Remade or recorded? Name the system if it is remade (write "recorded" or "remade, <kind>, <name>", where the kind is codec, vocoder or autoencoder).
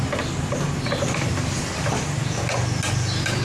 recorded